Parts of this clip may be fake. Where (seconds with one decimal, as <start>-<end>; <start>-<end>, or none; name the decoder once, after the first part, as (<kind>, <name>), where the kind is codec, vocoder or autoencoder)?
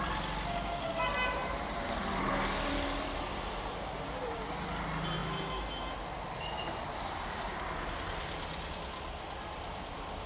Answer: 1.4-2.3 (vocoder, BigVGAN v2)